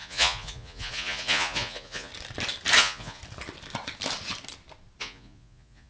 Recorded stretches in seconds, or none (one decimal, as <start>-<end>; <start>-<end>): 2.1-2.8; 3.2-5.0